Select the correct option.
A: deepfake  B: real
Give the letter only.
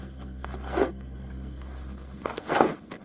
A